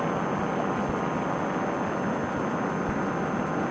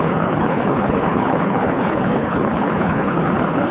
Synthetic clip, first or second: second